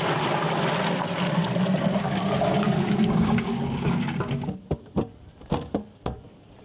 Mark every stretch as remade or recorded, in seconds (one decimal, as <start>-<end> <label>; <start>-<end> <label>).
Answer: 0.0-1.9 recorded; 1.9-4.6 remade; 4.6-6.6 recorded